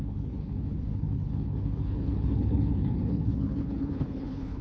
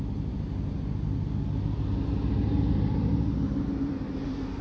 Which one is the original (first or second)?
second